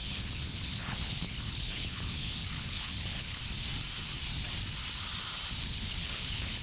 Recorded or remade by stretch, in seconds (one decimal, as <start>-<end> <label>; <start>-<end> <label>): 0.0-3.4 remade; 3.4-5.6 recorded; 5.6-6.6 remade